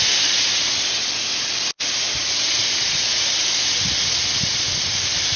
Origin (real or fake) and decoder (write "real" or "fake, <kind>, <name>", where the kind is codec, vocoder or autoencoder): real